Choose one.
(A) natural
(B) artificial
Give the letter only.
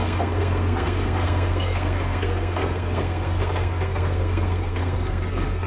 B